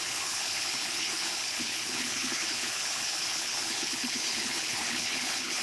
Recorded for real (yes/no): no